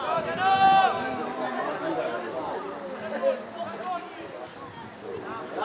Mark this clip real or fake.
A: real